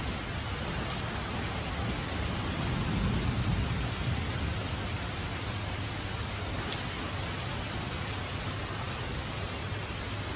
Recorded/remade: recorded